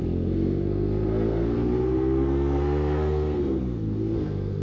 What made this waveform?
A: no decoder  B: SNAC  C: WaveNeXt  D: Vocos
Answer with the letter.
B